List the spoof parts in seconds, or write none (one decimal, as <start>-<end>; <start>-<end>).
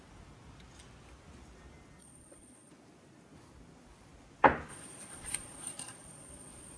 2.0-2.7; 4.7-6.8